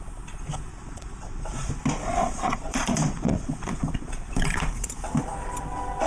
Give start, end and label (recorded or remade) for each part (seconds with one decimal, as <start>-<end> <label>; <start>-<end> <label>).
0.0-0.7 recorded; 0.7-1.7 remade; 1.7-2.1 recorded; 2.1-4.7 remade; 4.7-6.1 recorded